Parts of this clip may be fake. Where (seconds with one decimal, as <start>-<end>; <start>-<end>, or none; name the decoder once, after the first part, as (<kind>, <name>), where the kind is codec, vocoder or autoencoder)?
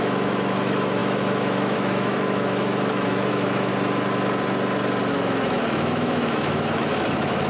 0.0-3.7 (autoencoder, DAC-VAE); 5.1-7.5